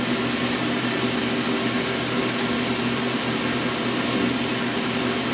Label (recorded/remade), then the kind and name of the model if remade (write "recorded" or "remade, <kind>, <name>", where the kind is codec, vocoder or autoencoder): recorded